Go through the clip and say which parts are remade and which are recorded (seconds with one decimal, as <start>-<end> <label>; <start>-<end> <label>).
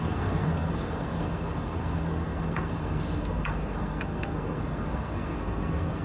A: 0.0-6.0 remade